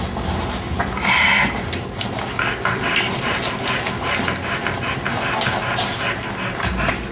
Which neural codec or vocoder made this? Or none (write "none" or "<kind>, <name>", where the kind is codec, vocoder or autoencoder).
none